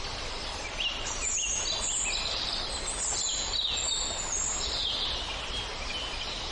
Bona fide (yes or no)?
yes